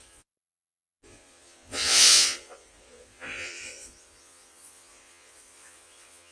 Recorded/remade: remade